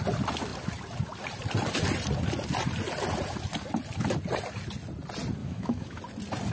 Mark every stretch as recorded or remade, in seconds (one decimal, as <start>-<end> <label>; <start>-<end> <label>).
0.0-5.4 recorded; 5.4-6.0 remade; 6.0-6.5 recorded